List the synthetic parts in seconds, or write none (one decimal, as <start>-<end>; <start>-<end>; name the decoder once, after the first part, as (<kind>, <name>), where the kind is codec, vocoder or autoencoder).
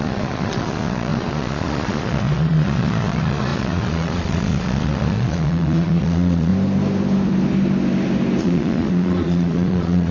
0.0-6.5 (vocoder, Vocos); 8.4-10.1